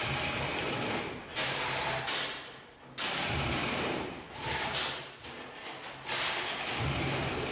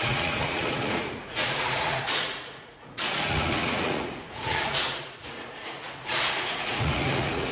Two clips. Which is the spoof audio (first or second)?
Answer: second